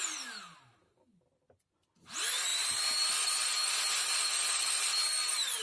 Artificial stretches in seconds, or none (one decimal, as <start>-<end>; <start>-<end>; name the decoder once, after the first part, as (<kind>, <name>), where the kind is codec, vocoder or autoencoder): none